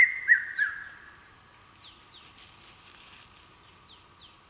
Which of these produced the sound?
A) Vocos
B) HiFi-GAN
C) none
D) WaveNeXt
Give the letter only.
C